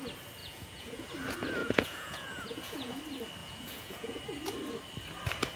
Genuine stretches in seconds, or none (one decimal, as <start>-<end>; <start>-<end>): 0.0-0.4; 1.1-1.6; 3.0-3.4; 4.2-5.6